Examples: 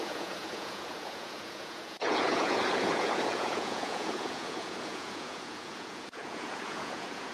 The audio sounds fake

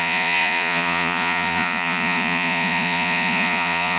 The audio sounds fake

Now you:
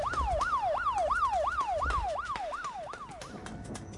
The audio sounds real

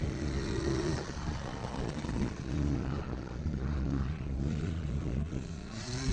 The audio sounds fake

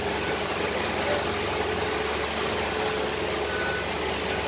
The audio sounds real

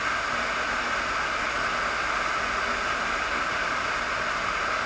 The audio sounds real